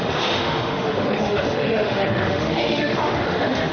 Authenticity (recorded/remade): remade